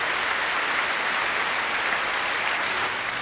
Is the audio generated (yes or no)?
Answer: no